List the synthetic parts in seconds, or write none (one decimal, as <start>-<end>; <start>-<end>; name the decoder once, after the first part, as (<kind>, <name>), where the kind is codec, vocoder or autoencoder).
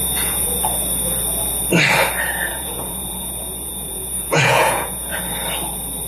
0.0-0.6 (vocoder, Vocos); 2.5-5.2